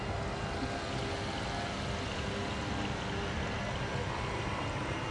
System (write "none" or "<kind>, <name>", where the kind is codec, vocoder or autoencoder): none